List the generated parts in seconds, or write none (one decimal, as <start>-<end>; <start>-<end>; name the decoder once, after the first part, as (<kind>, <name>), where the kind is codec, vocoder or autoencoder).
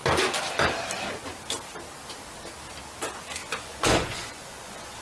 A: 3.4-5.0 (vocoder, Vocos)